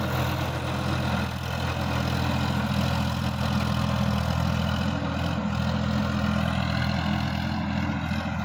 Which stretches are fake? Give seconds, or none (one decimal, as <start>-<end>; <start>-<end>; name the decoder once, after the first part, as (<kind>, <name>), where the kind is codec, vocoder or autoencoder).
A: none